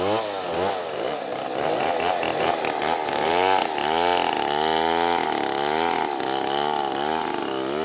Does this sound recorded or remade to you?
recorded